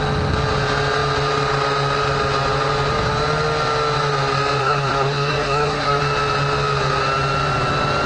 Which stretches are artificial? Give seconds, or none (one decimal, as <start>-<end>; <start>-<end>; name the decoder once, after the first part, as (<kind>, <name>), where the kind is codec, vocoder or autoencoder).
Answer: 4.6-6.0 (codec, SNAC)

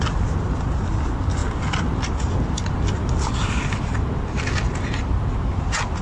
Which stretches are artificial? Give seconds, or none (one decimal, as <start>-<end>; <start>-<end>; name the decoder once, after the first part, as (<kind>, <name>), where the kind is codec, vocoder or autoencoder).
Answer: none